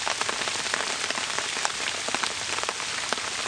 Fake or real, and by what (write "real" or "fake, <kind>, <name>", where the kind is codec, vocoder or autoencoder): real